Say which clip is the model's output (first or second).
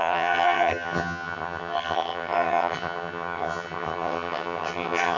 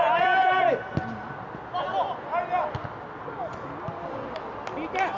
first